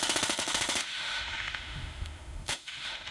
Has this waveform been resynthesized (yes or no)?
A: yes